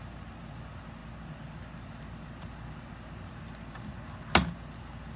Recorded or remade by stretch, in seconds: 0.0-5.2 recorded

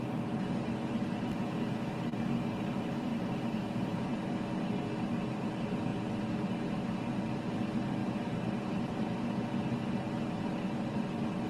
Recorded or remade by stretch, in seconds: 0.0-3.1 recorded; 3.1-4.0 remade; 4.0-8.0 recorded; 8.0-9.3 remade; 9.3-11.5 recorded

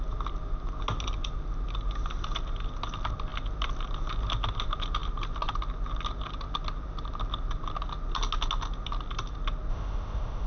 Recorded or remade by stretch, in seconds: 0.0-9.7 recorded; 9.7-10.5 remade

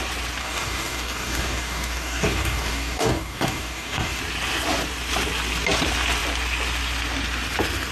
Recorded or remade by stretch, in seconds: 0.0-0.4 recorded; 0.4-4.2 remade; 4.2-7.9 recorded